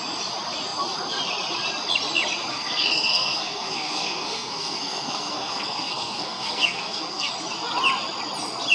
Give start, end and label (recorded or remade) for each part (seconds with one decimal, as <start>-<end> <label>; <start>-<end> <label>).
0.0-2.5 recorded; 2.5-7.3 remade; 7.3-8.7 recorded